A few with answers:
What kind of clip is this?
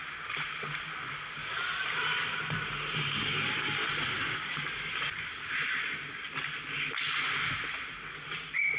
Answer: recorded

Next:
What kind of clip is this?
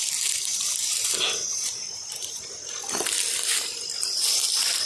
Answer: recorded